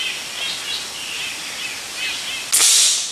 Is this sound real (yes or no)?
yes